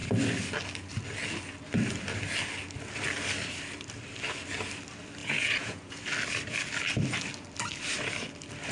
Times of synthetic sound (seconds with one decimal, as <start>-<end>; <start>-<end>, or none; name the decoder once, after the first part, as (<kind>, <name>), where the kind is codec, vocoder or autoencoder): 5.2-6.0 (vocoder, Vocos)